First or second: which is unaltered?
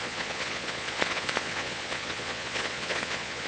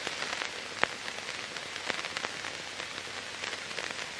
second